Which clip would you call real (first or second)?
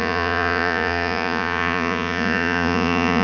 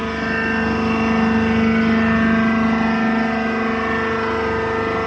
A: second